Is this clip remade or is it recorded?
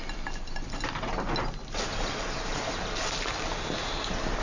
recorded